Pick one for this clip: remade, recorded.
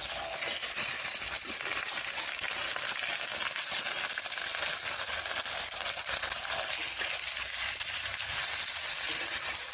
recorded